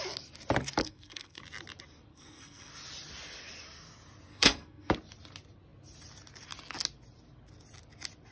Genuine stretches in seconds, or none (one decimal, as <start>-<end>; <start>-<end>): 0.0-0.8; 1.4-2.1; 2.7-4.3; 4.9-8.3